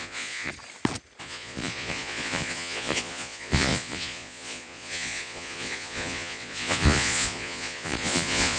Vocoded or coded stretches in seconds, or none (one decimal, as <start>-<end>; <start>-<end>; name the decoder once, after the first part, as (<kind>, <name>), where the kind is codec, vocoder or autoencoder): 0.0-0.5 (vocoder, Vocos); 1.2-8.6